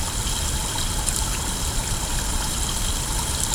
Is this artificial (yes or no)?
no